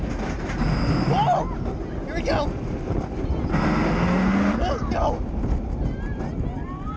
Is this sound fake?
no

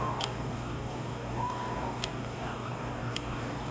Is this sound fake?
yes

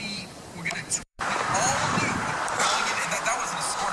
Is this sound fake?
yes